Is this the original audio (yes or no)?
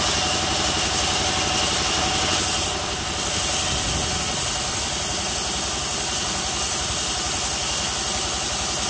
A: yes